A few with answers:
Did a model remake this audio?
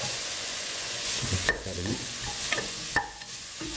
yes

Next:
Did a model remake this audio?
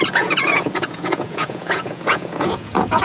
yes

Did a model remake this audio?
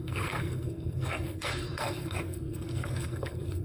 yes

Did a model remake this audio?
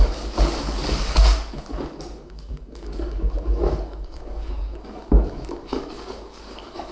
yes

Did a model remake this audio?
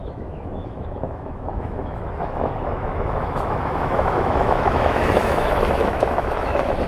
yes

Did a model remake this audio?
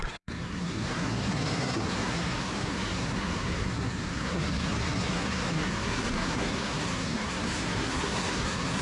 yes